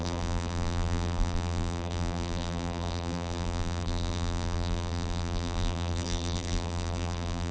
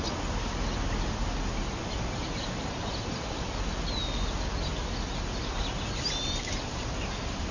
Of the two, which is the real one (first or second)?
second